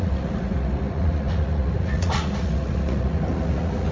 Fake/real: fake